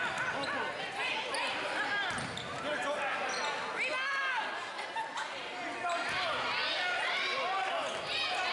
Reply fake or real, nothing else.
real